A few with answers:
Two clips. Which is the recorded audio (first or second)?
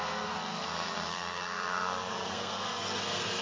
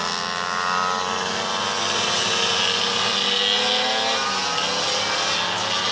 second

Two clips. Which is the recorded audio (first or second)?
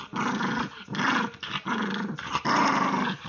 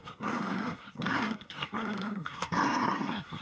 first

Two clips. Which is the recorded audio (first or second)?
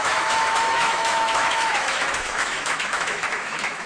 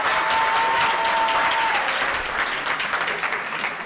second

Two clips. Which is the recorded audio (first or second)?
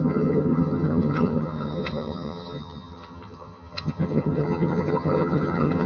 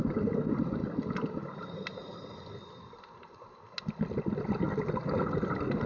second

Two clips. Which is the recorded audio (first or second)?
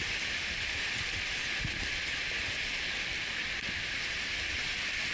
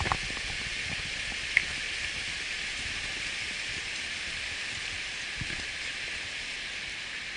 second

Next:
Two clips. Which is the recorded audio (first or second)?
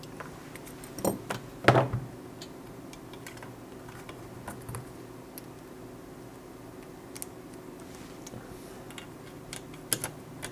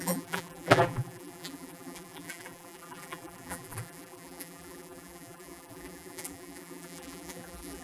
first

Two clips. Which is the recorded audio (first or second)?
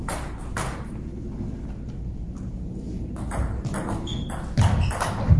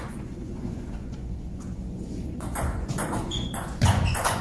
first